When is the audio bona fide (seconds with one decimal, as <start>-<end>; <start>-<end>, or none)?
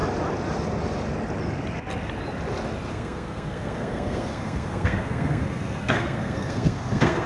0.0-2.9